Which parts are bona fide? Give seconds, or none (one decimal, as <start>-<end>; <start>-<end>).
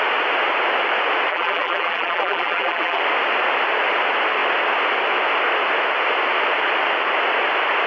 0.0-1.3; 3.0-7.9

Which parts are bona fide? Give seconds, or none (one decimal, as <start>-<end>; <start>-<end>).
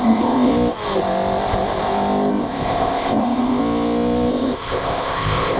0.5-2.3; 3.6-4.3